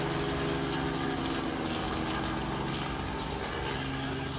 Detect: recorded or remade recorded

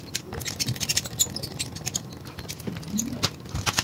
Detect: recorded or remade recorded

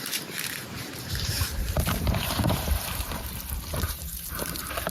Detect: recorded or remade remade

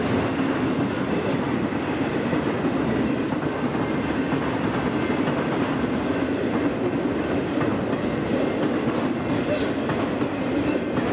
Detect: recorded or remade recorded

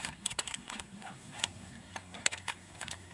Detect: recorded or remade remade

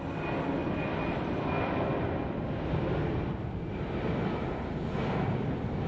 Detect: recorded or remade recorded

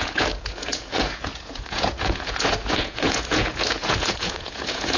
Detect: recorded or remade remade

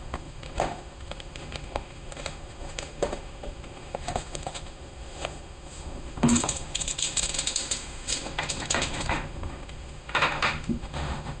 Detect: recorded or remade remade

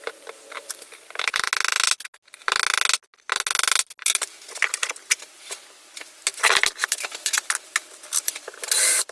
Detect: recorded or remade recorded